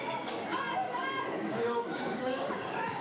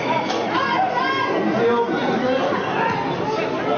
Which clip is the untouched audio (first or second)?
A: second